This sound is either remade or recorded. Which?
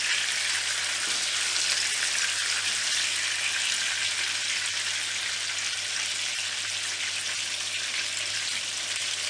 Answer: recorded